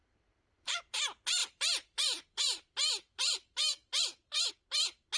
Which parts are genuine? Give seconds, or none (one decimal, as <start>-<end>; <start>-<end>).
0.8-1.4; 4.5-5.2